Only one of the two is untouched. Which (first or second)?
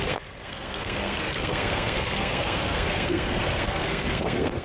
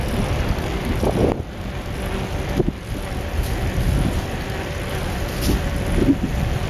second